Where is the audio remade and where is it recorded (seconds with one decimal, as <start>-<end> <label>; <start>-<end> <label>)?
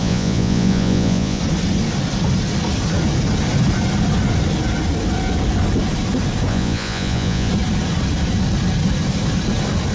0.0-1.4 remade; 1.4-6.5 recorded; 6.5-7.5 remade; 7.5-9.9 recorded